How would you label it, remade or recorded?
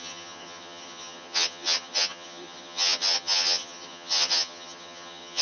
remade